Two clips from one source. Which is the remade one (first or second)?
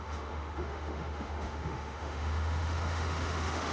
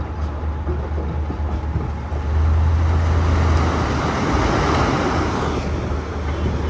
first